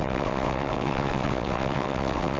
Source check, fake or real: fake